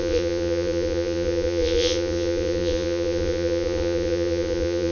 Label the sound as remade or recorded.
remade